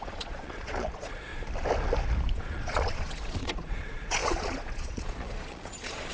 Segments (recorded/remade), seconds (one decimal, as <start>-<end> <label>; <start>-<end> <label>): 0.0-1.3 remade; 1.3-2.3 recorded; 2.3-6.1 remade